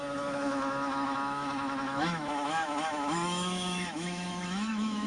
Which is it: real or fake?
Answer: fake